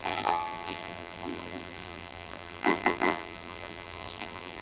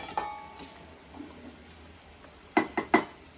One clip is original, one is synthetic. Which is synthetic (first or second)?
first